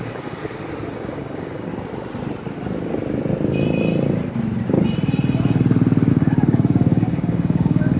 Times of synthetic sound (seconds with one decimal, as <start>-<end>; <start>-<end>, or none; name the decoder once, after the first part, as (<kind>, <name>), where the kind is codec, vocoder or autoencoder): 0.0-0.4 (codec, DAC); 0.9-1.7; 6.1-8.0